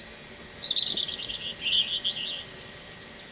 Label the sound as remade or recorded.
recorded